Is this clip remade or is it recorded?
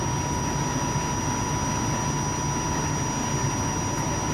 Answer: recorded